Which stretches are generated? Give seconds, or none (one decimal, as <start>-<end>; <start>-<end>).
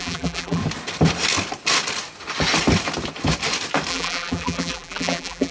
0.0-0.6; 3.9-5.5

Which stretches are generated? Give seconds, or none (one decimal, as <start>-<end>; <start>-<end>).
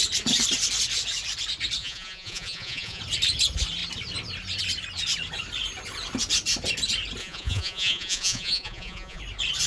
1.8-3.0; 7.2-9.2